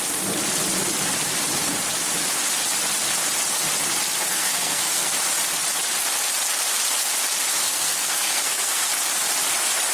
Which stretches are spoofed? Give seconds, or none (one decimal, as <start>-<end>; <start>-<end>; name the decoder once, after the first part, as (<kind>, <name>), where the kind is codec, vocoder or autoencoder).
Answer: 4.3-5.1 (codec, SNAC); 7.6-8.9